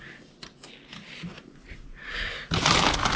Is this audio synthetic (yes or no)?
no